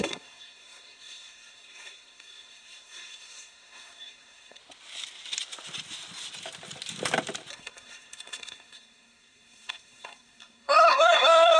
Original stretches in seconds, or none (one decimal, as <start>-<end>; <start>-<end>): 4.6-7.5